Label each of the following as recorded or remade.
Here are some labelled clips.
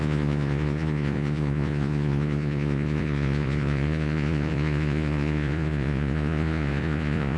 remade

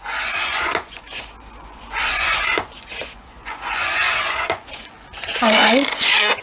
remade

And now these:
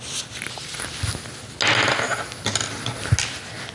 recorded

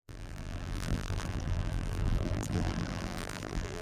remade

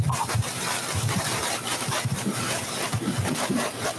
remade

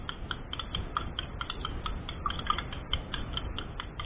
recorded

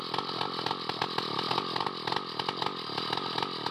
recorded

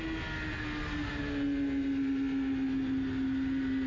recorded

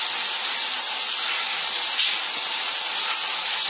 recorded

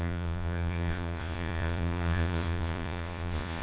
remade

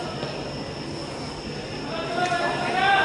recorded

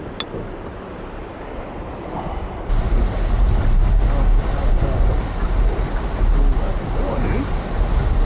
recorded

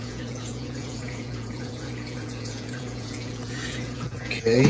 remade